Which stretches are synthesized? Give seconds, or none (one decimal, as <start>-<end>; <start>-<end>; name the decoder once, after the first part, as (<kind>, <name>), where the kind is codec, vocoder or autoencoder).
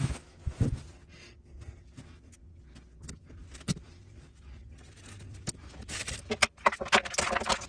none